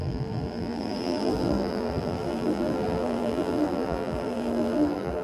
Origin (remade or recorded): remade